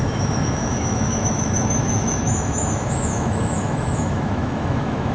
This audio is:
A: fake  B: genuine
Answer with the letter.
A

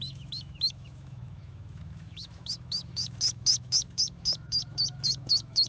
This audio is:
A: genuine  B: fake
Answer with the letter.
B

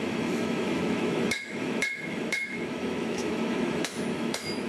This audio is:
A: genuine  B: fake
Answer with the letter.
B